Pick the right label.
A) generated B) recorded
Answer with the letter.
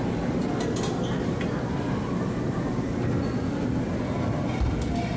B